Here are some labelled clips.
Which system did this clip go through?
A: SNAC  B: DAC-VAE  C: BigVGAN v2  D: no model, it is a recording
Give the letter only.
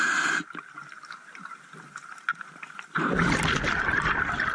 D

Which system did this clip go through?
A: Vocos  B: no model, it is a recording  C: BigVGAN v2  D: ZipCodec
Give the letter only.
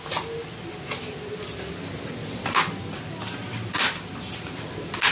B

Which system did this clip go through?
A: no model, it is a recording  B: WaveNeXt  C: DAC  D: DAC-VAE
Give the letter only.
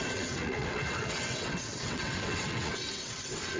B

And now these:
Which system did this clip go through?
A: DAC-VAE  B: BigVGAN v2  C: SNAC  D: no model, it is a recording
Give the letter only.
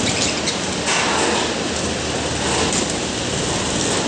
D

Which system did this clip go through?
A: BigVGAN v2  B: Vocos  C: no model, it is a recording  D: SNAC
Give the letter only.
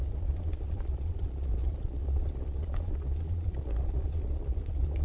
B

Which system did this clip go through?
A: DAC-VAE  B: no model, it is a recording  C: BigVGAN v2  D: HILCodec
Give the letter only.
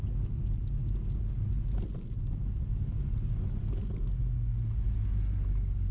B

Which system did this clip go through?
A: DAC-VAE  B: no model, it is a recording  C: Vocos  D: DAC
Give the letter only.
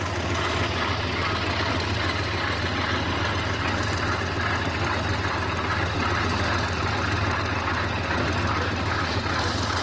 B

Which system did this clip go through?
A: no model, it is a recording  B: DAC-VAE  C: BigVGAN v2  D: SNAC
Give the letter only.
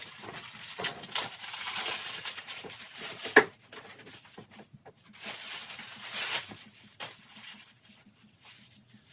C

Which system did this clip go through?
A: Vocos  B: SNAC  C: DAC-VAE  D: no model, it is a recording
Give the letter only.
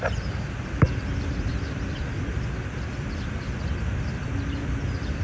D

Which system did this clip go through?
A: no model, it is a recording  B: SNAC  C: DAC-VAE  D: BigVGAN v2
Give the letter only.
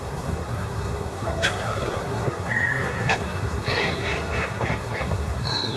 B